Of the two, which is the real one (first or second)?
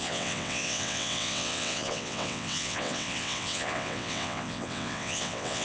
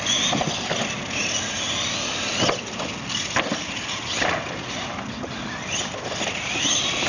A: second